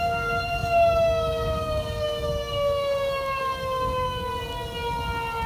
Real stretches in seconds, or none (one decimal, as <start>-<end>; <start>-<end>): 4.3-5.5